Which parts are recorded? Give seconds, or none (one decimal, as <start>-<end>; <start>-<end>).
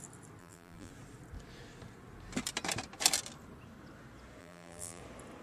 0.0-0.4; 0.9-4.4; 5.0-5.4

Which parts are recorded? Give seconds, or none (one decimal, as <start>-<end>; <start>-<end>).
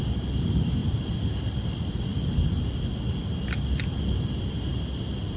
0.0-5.4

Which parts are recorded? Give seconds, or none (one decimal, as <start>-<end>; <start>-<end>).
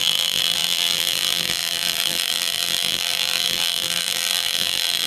none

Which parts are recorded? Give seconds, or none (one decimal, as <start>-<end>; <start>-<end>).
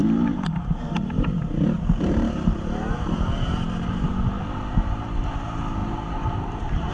4.1-5.8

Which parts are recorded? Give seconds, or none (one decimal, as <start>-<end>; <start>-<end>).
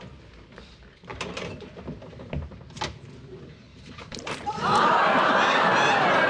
0.0-1.1; 1.7-3.7; 5.0-6.3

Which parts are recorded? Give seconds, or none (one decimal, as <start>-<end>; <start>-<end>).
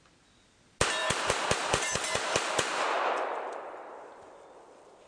0.0-1.0; 4.1-5.1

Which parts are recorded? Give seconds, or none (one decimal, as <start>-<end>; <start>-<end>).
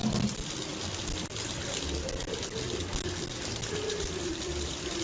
0.7-3.7